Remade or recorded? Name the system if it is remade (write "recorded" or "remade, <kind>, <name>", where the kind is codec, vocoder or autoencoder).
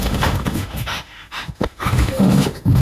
remade, autoencoder, DAC-VAE